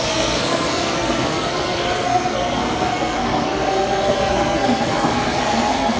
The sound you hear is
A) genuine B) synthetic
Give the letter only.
B